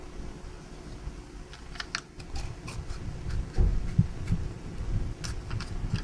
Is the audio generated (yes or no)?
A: no